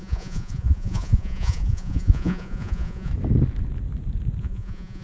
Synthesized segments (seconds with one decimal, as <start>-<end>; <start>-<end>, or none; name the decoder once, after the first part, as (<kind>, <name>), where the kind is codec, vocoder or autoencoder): 0.0-3.1 (vocoder, Vocos); 4.4-5.0

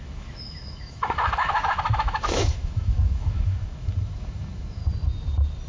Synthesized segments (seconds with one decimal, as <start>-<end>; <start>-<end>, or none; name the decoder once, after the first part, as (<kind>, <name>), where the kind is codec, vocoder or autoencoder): 0.0-4.8 (autoencoder, DAC-VAE)

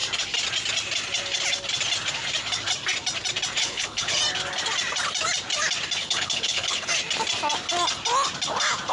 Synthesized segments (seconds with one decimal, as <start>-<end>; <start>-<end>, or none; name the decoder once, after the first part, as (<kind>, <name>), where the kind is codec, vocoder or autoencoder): 3.6-4.2 (codec, HILCodec); 6.0-6.9

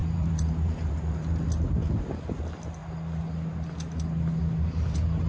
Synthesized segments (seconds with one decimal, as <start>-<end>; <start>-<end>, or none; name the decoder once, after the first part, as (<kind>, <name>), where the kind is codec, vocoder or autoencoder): 0.0-1.3 (vocoder, BigVGAN v2)

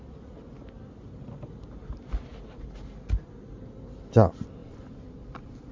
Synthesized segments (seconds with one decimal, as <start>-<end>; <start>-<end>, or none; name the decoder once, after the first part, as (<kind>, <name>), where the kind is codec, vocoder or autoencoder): none